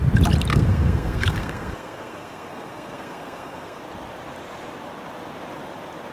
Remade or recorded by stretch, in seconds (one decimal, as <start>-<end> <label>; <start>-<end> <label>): 0.0-0.5 recorded; 0.5-3.8 remade; 3.8-6.1 recorded